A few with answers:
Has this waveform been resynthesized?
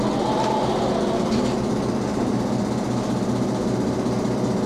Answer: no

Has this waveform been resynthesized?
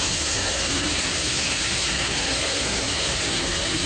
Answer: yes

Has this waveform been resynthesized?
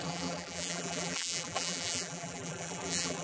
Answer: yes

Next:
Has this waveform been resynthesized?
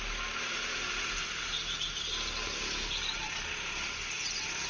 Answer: no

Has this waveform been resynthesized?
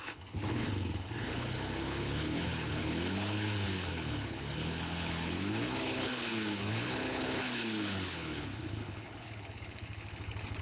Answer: yes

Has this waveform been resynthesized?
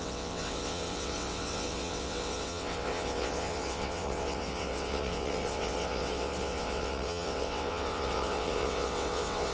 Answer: yes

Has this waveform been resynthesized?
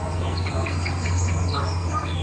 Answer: yes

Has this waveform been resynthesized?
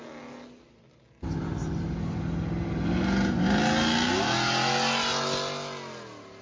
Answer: no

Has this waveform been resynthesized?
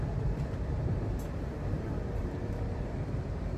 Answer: yes